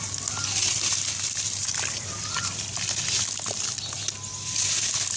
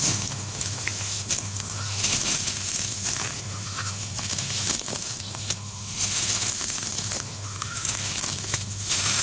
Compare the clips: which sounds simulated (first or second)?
second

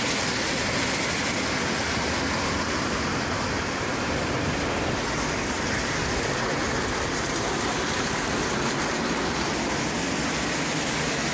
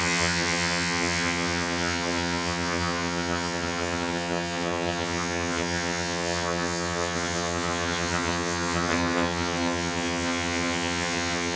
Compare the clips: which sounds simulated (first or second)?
second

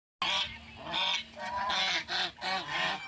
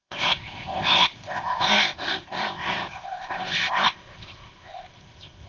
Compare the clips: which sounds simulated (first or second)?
second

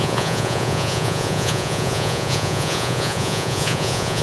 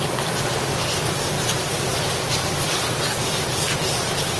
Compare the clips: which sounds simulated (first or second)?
first